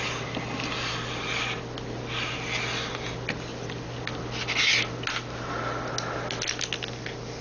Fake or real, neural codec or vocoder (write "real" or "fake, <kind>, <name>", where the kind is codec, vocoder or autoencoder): real